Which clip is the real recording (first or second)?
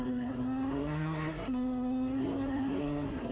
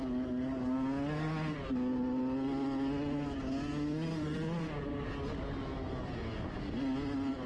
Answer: second